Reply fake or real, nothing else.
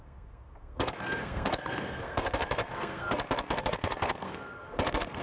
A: fake